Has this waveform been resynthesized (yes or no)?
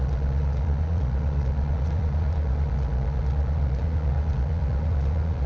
yes